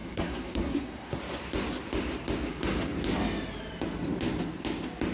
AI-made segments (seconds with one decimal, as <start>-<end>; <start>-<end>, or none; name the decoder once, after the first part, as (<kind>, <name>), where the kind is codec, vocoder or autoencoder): 0.0-1.2 (codec, SNAC)